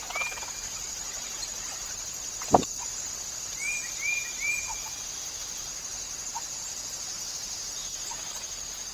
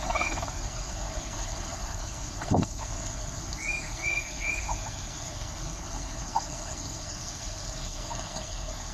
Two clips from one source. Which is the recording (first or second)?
first